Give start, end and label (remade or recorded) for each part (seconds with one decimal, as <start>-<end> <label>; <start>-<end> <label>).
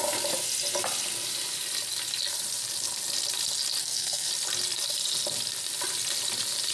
0.0-3.8 recorded; 3.8-4.3 remade; 4.3-6.7 recorded